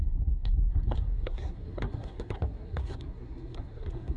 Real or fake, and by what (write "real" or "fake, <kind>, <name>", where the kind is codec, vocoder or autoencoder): fake, codec, SNAC